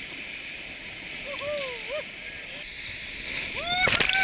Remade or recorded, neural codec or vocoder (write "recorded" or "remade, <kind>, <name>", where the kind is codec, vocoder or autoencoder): recorded